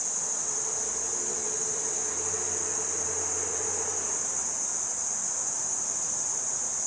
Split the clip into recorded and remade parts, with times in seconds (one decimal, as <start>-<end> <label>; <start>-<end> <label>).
0.0-3.5 recorded; 3.5-4.7 remade; 4.7-6.9 recorded